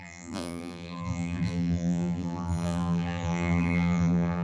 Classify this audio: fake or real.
fake